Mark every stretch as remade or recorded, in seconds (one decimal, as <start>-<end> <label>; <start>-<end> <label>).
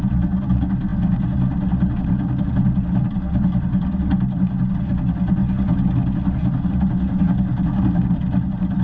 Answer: 0.0-8.8 recorded